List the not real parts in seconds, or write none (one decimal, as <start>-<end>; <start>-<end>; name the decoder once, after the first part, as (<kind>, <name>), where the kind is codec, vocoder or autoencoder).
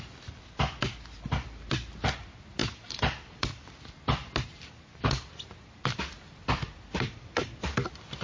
none